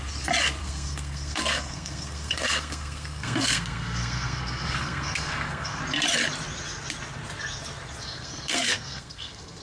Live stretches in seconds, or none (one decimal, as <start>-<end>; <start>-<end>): 0.0-0.6; 5.8-8.1